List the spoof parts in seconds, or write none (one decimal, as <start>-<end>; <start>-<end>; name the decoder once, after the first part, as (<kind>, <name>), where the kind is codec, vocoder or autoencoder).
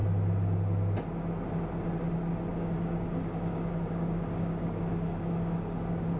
2.5-6.2 (codec, DAC)